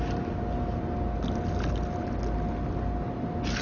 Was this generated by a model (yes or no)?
no